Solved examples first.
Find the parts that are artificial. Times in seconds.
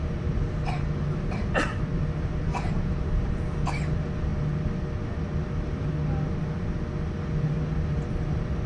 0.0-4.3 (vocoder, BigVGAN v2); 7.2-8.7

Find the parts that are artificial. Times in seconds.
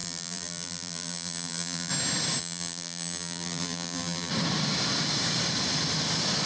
0.0-1.9 (vocoder, BigVGAN v2); 2.4-4.3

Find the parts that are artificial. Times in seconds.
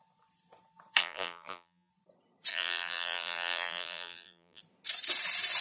1.0-1.9 (vocoder, BigVGAN v2); 2.5-4.6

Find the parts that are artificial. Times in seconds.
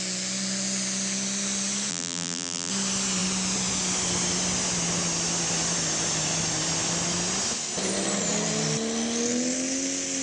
1.9-2.7 (vocoder, BigVGAN v2)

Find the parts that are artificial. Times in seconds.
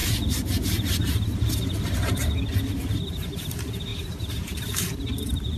0.0-1.1 (vocoder, BigVGAN v2); 3.9-5.6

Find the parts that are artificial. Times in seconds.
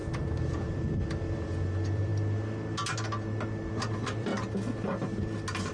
0.0-2.1 (vocoder, BigVGAN v2); 3.8-4.3